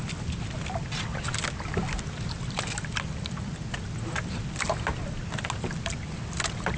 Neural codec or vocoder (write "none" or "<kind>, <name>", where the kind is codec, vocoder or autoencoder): none